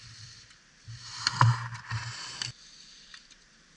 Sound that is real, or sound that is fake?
real